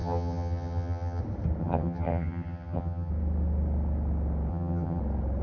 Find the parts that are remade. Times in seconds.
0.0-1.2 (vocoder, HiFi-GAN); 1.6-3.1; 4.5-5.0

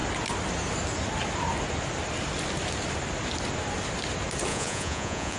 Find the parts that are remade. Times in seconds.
4.5-5.4 (vocoder, Vocos)